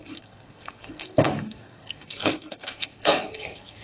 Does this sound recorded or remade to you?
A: remade